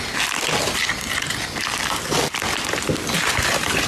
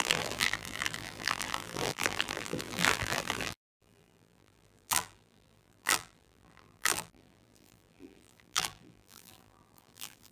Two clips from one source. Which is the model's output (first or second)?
second